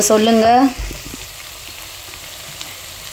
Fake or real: real